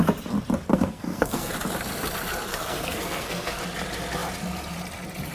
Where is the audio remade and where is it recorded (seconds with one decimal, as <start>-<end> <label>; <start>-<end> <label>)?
0.0-0.7 recorded; 0.7-1.5 remade; 1.5-2.5 recorded; 2.5-3.6 remade; 3.6-5.3 recorded

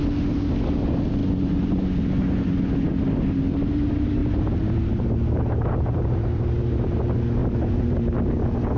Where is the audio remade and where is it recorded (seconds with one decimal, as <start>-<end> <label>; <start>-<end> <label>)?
0.0-4.2 recorded; 4.2-6.5 remade; 6.5-7.4 recorded; 7.4-8.0 remade; 8.0-8.8 recorded

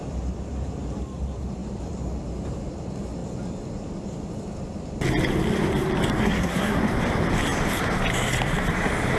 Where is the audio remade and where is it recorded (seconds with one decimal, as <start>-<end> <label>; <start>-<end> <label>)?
0.0-6.2 recorded; 6.2-6.8 remade; 6.8-9.2 recorded

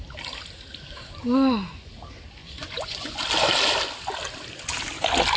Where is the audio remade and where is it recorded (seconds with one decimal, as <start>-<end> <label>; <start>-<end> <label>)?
0.0-1.2 recorded; 1.2-1.9 remade; 1.9-2.4 recorded; 2.4-3.2 remade; 3.2-5.4 recorded